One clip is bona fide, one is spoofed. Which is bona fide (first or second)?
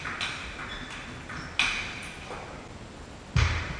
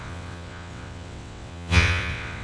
first